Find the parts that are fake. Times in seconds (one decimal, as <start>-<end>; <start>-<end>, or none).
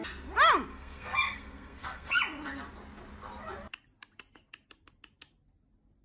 0.7-2.2